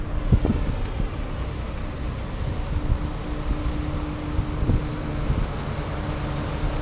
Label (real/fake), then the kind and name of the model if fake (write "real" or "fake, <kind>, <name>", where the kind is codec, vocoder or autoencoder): real